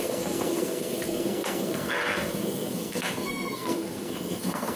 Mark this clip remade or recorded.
remade